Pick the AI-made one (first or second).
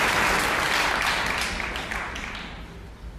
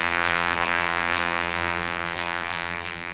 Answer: second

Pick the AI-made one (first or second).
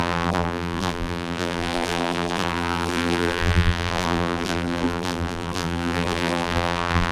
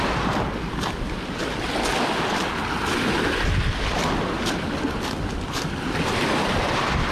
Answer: first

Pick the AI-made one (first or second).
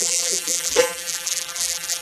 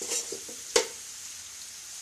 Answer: first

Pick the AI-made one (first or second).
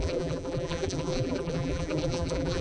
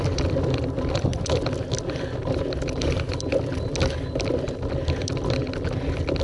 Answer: first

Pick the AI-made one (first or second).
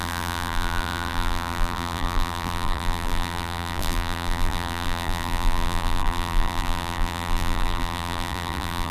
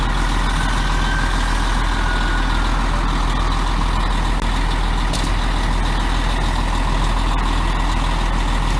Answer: first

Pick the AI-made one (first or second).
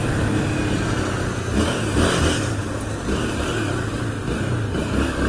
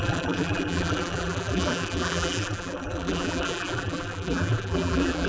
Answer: second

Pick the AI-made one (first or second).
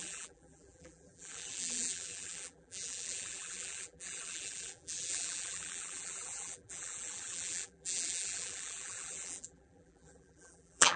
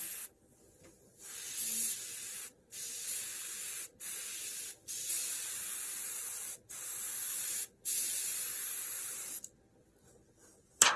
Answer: first